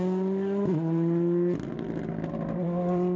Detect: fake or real real